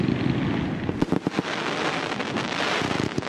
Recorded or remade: recorded